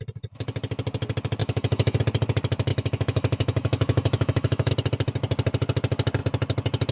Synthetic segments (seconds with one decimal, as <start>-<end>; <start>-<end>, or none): 1.4-2.0; 2.7-4.7